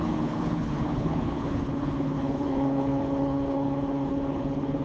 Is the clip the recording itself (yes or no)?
no